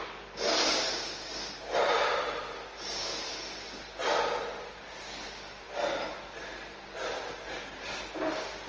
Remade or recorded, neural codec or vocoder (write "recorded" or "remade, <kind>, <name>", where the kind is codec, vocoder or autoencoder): recorded